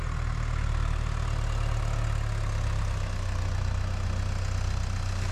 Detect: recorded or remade recorded